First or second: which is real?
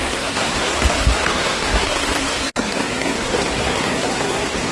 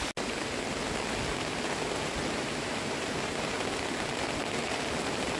second